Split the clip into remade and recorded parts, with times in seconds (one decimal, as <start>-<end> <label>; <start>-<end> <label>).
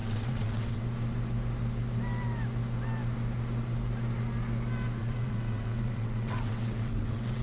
0.0-0.8 remade; 0.8-5.0 recorded; 5.0-7.4 remade